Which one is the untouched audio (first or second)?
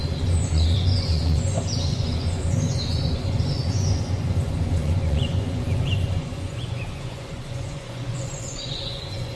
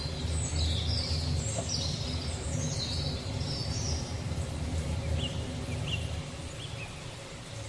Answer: second